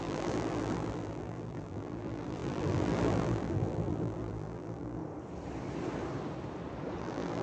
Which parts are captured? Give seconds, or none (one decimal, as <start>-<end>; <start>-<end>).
5.0-7.0